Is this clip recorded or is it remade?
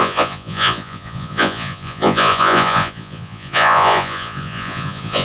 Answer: remade